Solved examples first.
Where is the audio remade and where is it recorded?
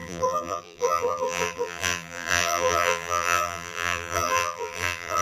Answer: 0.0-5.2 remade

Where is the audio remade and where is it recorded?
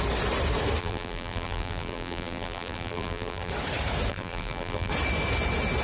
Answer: 0.0-0.8 recorded; 0.8-3.5 remade; 3.5-4.1 recorded; 4.1-4.9 remade; 4.9-5.8 recorded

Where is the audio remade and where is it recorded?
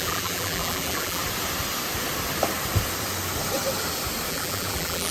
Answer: 0.0-1.2 remade; 1.2-4.3 recorded; 4.3-5.1 remade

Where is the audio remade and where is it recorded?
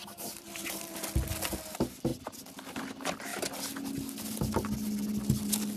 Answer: 0.0-1.0 remade; 1.0-5.8 recorded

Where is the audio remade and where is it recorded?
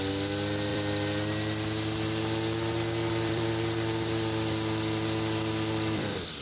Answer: 0.0-6.4 remade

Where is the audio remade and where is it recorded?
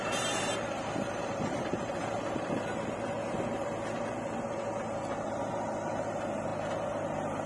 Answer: 0.0-3.7 remade; 3.7-7.5 recorded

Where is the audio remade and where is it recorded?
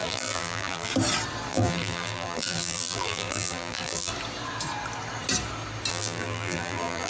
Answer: 0.0-0.9 remade; 0.9-1.5 recorded; 1.5-4.1 remade; 4.1-5.9 recorded; 5.9-7.1 remade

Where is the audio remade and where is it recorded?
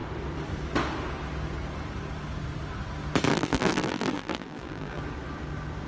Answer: 0.0-3.3 recorded; 3.3-5.0 remade; 5.0-5.9 recorded